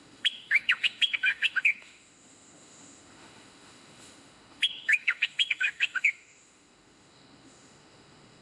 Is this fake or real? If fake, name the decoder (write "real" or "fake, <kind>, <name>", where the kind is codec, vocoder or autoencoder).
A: fake, autoencoder, DAC-VAE